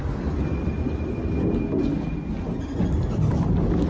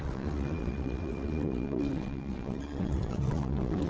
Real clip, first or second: first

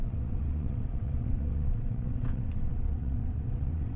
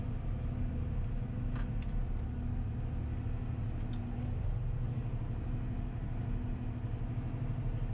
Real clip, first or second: second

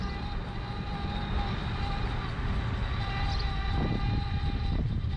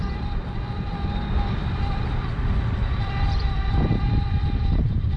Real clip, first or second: first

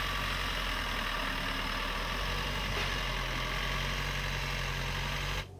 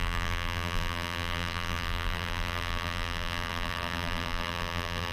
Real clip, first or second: first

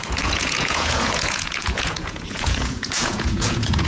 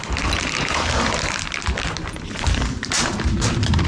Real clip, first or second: second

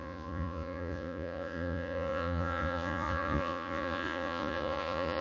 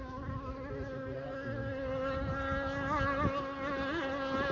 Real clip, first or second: second